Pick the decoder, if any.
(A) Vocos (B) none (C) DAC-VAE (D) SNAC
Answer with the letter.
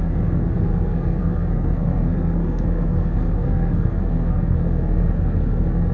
D